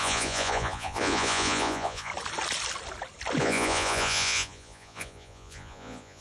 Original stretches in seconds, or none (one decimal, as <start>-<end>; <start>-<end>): 2.1-3.4